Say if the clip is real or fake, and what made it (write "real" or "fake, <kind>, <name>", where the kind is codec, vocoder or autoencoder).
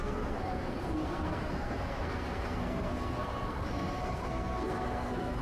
fake, codec, SNAC